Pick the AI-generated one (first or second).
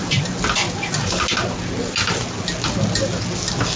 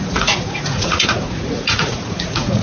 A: second